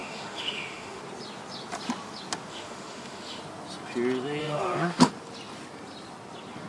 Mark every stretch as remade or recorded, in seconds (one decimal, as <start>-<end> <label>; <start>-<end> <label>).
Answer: 0.0-1.0 remade; 1.0-2.5 recorded; 2.5-3.4 remade; 3.4-4.4 recorded; 4.4-5.1 remade; 5.1-6.7 recorded